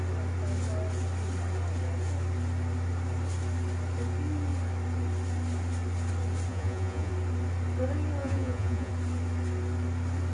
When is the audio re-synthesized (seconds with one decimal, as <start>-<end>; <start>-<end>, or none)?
6.5-7.1; 8.2-8.9